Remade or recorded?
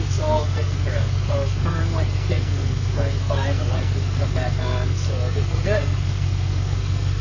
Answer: remade